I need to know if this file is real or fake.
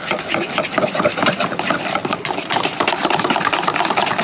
real